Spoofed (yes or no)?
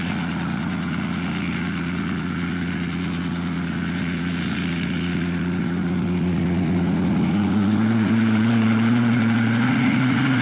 yes